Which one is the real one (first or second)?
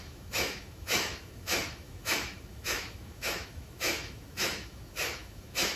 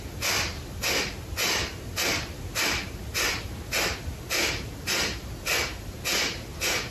second